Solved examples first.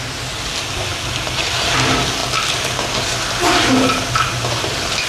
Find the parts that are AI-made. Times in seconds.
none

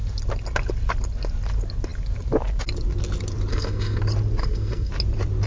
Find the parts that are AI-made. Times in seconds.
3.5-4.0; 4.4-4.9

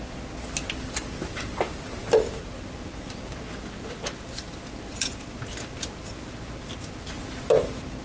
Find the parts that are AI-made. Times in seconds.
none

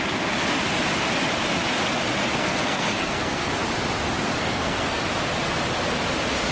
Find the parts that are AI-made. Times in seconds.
2.4-3.5; 4.4-5.0

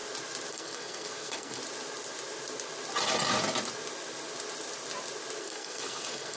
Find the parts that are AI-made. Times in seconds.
0.5-1.6; 5.4-6.4

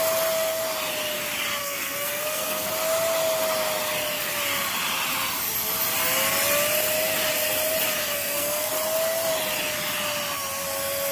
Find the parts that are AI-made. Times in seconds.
1.6-2.7; 8.0-8.7